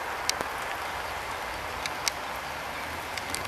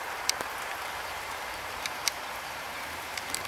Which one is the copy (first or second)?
second